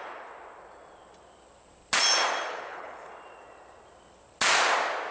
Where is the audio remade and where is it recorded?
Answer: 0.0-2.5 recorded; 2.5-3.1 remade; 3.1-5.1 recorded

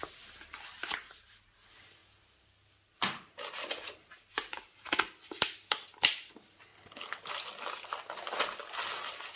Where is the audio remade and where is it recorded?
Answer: 0.0-6.7 recorded; 6.7-7.3 remade; 7.3-9.4 recorded